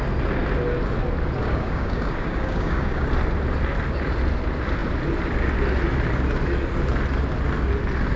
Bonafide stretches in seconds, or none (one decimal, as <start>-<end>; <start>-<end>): 0.0-1.4; 3.1-8.2